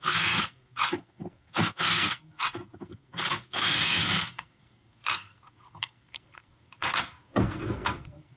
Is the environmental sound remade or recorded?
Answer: remade